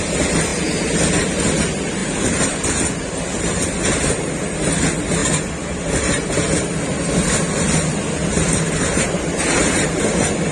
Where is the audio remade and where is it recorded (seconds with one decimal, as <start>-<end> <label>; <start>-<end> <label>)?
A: 0.0-2.0 recorded; 2.0-2.7 remade; 2.7-10.5 recorded